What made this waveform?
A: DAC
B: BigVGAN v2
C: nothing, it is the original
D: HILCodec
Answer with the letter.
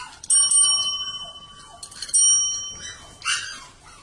C